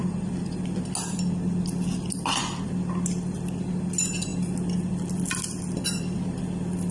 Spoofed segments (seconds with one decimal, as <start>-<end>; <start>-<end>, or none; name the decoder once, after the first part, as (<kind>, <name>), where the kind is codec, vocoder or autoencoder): none